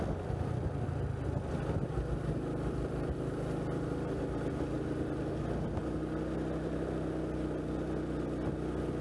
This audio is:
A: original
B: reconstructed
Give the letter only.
A